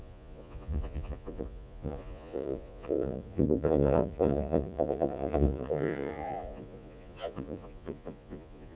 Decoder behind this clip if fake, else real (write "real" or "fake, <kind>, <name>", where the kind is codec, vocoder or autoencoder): fake, vocoder, Vocos